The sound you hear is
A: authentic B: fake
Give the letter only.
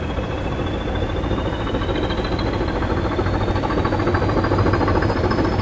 A